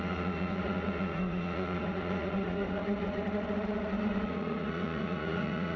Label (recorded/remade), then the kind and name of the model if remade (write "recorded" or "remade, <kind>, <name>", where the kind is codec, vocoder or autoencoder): remade, vocoder, Vocos